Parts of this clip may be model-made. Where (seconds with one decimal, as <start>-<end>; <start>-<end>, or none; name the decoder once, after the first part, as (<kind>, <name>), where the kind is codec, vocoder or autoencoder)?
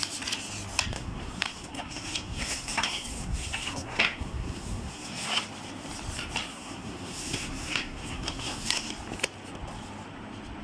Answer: 0.9-5.4 (codec, SNAC); 6.5-8.9